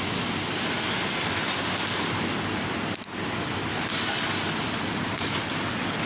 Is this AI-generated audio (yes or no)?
no